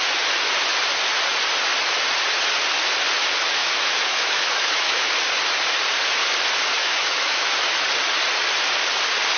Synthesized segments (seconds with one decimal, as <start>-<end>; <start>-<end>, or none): 3.6-5.1; 6.8-7.5